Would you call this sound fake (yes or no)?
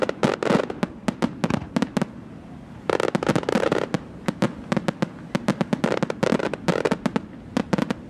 no